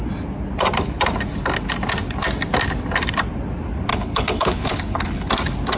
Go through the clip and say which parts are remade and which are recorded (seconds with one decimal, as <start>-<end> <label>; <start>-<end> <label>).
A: 0.0-3.9 recorded; 3.9-5.3 remade; 5.3-5.8 recorded